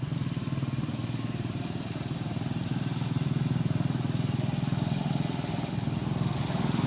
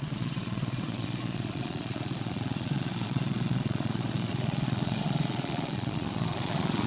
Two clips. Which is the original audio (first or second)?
first